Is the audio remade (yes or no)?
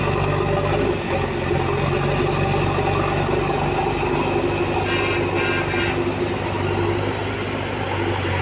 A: no